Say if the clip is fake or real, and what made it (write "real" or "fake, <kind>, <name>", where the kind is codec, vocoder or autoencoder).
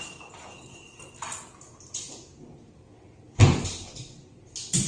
real